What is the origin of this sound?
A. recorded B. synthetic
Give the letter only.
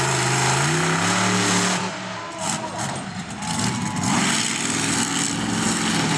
A